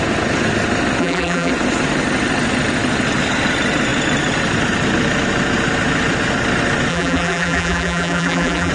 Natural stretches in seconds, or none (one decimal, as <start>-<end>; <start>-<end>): 0.0-1.0; 1.5-6.9